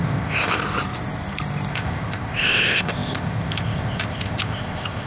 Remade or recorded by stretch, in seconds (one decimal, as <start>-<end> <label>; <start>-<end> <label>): 0.0-0.6 remade; 0.6-1.7 recorded; 1.7-5.1 remade